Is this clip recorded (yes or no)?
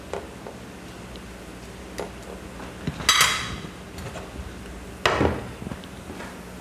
yes